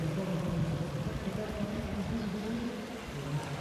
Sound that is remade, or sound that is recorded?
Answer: recorded